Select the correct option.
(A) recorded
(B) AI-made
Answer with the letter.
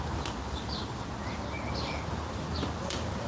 A